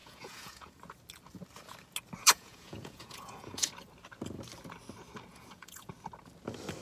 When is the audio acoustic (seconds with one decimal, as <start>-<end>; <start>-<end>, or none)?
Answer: 0.8-2.2; 3.7-5.3; 5.9-6.8